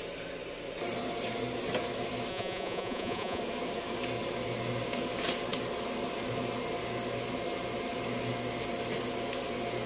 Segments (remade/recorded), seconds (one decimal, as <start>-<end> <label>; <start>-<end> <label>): 0.0-2.3 recorded; 2.3-3.4 remade; 3.4-9.9 recorded